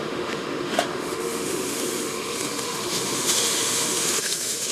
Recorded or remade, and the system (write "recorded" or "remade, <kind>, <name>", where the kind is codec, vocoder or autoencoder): remade, autoencoder, DAC-VAE